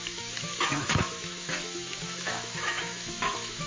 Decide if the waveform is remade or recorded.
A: remade